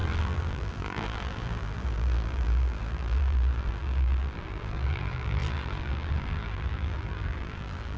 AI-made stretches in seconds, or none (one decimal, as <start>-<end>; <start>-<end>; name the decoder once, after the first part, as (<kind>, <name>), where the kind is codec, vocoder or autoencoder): 0.0-8.0 (vocoder, BigVGAN v2)